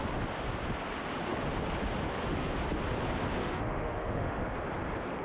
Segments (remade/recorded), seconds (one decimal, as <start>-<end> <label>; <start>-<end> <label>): 0.0-3.4 recorded; 3.4-4.4 remade; 4.4-5.2 recorded